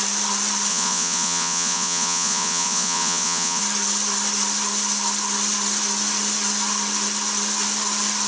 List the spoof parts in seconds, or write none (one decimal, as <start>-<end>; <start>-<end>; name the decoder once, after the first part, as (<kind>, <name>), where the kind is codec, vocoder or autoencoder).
0.7-3.6 (vocoder, Vocos)